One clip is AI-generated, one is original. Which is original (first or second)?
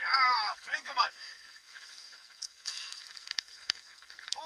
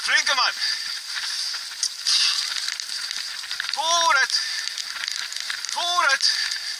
second